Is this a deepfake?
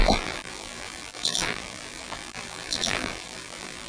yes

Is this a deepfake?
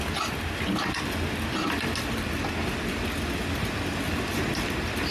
no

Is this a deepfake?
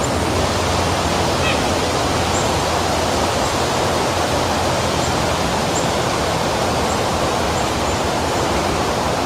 no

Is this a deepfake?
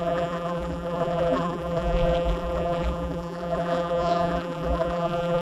yes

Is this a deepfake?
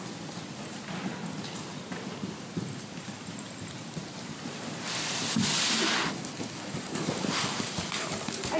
no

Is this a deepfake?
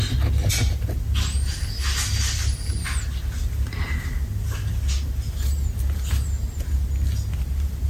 no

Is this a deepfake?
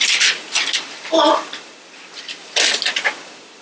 no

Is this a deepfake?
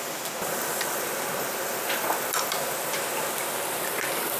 no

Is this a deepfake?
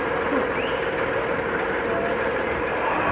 no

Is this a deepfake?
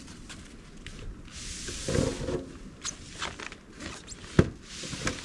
no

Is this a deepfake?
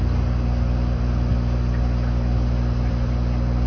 no